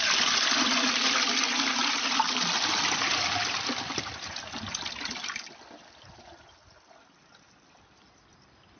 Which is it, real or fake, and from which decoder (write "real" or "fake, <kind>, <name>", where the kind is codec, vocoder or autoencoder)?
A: real